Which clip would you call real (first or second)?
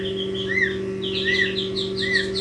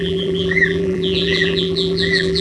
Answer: first